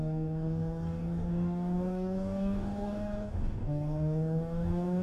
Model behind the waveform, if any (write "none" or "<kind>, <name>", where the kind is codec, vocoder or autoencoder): codec, DAC